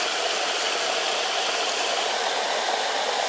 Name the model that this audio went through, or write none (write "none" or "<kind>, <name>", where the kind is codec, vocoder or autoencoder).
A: none